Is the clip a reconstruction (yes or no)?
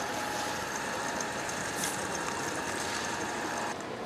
yes